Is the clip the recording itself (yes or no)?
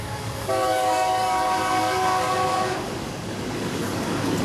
no